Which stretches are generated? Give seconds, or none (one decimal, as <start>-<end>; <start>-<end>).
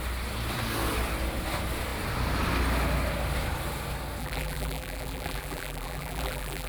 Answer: 4.2-6.7